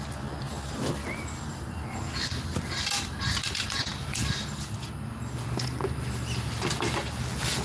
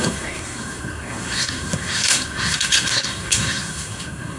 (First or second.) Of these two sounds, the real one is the first